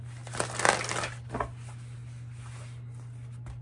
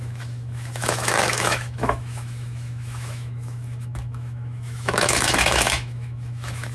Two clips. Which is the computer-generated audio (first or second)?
second